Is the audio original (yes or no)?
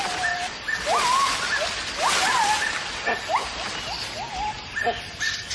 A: yes